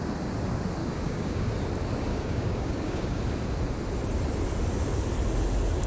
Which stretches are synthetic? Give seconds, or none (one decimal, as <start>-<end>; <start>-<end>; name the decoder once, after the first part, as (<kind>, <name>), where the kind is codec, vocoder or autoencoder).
0.8-1.5 (codec, DAC); 2.1-3.2